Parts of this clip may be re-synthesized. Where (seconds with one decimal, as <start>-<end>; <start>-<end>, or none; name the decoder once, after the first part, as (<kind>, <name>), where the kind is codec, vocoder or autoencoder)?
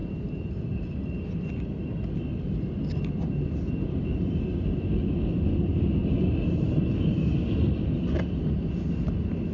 0.0-0.9 (vocoder, BigVGAN v2); 6.0-7.7